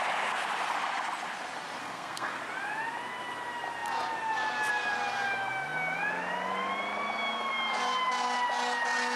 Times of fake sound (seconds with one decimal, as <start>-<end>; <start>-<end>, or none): 1.8-2.4